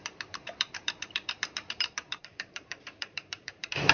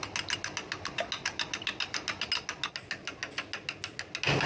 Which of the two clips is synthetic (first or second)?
first